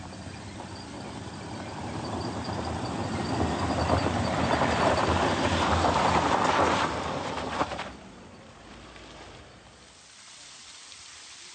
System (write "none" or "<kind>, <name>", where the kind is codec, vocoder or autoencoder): vocoder, BigVGAN v2